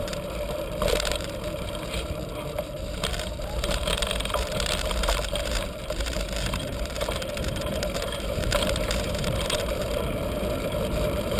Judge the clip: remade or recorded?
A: remade